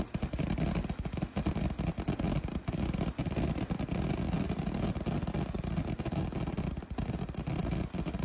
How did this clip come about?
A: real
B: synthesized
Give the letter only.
A